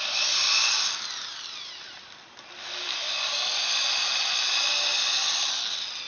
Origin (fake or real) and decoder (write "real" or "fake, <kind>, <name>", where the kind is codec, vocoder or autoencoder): real